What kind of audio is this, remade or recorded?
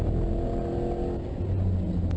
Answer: recorded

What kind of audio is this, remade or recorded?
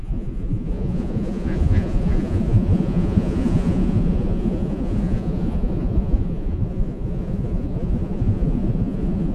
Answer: remade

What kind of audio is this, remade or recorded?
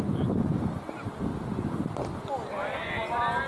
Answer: recorded